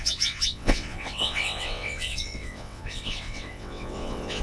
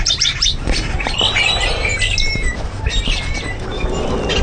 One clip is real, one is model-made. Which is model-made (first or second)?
first